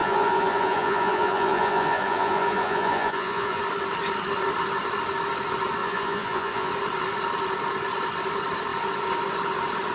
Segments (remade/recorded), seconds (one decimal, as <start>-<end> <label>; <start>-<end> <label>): 0.0-3.6 remade; 3.6-5.8 recorded; 5.8-6.7 remade; 6.7-9.9 recorded

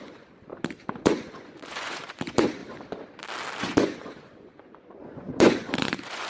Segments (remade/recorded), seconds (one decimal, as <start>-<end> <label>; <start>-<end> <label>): 0.0-0.5 remade; 0.5-1.0 recorded; 1.0-2.6 remade; 2.6-3.6 recorded; 3.6-6.3 remade

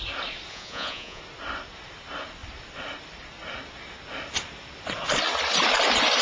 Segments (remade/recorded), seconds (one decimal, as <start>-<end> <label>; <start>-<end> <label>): 0.0-0.5 recorded; 0.5-1.2 remade; 1.2-6.2 recorded